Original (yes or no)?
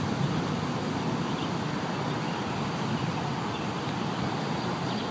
yes